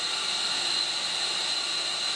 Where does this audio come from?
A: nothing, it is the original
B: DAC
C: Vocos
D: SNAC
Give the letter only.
A